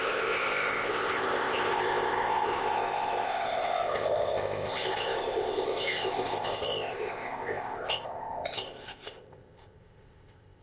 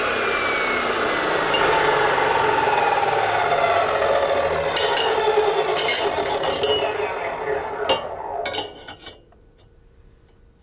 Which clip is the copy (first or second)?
first